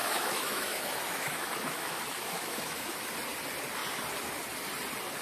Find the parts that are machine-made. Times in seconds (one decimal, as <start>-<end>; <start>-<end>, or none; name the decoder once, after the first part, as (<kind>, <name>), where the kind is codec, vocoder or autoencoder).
0.0-3.1 (autoencoder, DAC-VAE)